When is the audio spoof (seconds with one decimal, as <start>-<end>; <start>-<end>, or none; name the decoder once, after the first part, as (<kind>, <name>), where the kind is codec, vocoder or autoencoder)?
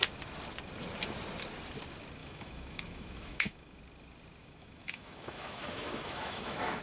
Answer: 2.2-3.8 (autoencoder, DAC-VAE); 4.4-6.8